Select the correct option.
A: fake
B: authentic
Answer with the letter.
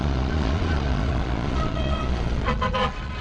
A